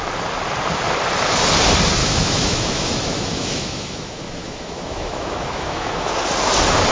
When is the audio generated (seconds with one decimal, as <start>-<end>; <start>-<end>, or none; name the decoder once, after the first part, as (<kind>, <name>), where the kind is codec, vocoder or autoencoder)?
2.0-6.1 (autoencoder, DAC-VAE)